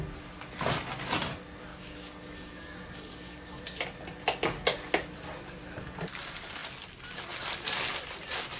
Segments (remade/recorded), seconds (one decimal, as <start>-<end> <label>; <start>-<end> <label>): 0.0-1.7 recorded; 1.7-3.6 remade; 3.6-8.6 recorded